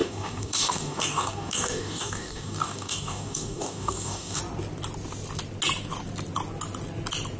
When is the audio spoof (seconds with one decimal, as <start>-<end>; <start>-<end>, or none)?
0.0-4.4